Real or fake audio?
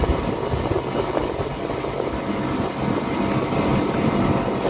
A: real